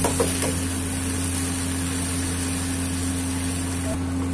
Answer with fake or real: real